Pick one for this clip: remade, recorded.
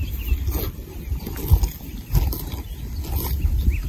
recorded